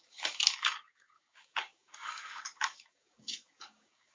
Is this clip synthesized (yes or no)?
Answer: yes